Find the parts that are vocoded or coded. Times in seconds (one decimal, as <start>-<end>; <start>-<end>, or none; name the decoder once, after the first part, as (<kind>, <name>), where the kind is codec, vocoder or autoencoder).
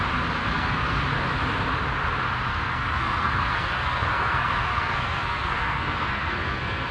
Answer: 0.4-1.0 (codec, SNAC); 2.5-6.9